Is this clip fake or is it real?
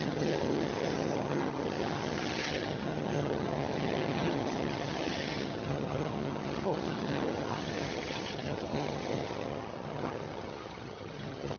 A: fake